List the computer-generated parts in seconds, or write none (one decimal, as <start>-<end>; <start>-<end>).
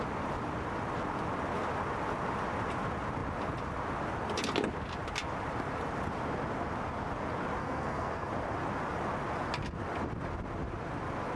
7.6-8.3